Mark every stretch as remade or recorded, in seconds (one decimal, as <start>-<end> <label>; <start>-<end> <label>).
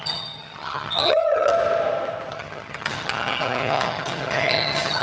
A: 0.0-1.5 remade; 1.5-2.3 recorded; 2.3-5.0 remade